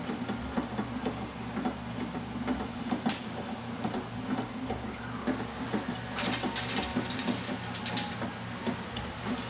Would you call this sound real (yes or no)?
yes